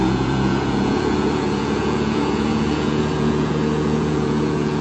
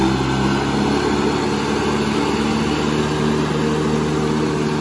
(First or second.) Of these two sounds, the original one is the second